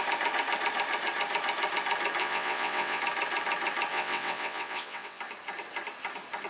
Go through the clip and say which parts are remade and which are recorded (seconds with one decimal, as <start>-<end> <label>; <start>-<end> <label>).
0.0-2.2 recorded; 2.2-3.0 remade; 3.0-3.9 recorded; 3.9-5.2 remade; 5.2-6.5 recorded